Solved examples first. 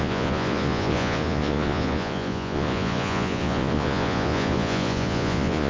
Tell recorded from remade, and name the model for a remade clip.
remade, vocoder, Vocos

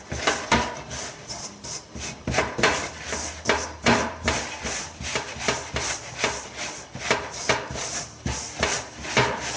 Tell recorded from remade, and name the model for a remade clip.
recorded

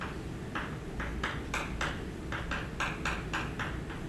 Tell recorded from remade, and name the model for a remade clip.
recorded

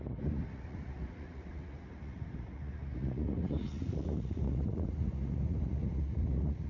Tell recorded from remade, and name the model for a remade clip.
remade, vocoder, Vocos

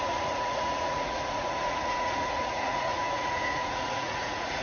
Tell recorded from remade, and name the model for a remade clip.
remade, vocoder, Vocos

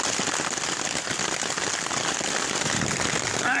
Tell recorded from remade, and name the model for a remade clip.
recorded